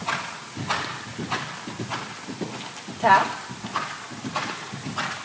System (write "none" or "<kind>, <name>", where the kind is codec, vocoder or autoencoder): none